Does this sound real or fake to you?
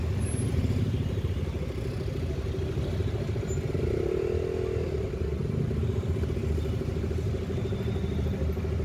real